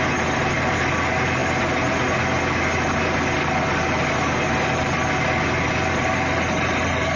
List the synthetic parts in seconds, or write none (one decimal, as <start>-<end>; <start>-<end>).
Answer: none